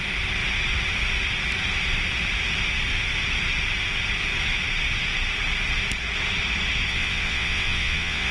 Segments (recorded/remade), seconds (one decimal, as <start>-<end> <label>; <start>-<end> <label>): 0.0-6.9 recorded; 6.9-8.3 remade